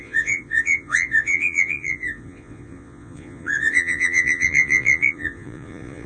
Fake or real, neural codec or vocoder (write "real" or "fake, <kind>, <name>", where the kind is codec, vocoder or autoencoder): fake, vocoder, Vocos